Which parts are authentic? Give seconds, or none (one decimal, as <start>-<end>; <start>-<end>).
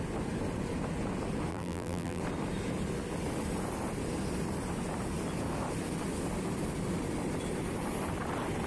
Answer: 0.0-1.5; 2.2-8.7